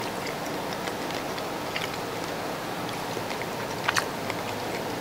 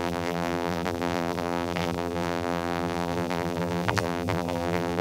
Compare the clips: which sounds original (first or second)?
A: first